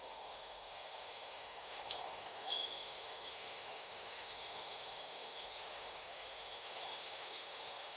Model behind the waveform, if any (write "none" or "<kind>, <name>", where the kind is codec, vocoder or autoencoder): autoencoder, DAC-VAE